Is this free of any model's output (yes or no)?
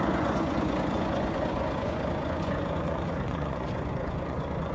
no